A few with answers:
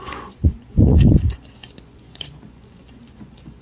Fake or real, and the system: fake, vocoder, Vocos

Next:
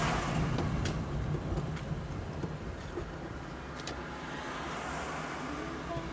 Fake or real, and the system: real